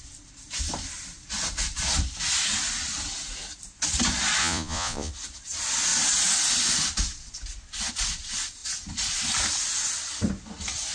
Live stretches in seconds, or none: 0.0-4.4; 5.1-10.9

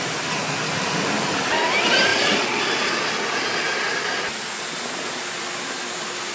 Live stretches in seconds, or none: 0.0-6.3

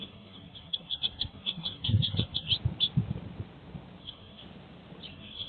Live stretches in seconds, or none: 2.5-4.0; 4.4-5.1